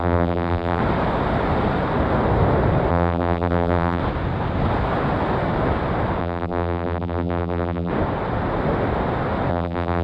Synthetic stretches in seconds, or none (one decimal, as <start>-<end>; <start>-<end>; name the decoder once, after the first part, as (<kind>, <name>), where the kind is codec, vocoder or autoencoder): 0.0-0.8 (vocoder, BigVGAN v2); 2.9-4.0; 6.2-7.9; 9.5-10.0